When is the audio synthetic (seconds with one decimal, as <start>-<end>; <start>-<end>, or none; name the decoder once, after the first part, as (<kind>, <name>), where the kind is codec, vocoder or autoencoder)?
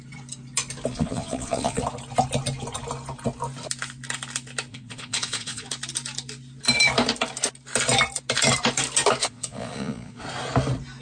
0.9-1.8 (vocoder, Vocos); 4.7-5.7; 9.2-10.2